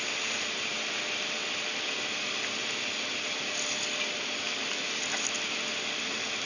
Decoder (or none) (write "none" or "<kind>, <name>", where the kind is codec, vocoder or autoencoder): none